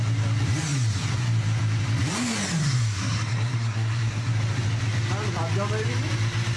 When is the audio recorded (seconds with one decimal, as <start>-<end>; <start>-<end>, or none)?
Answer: 0.0-2.6; 4.3-6.6